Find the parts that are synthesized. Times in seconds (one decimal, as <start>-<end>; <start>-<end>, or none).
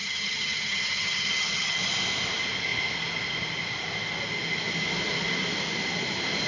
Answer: 0.0-1.8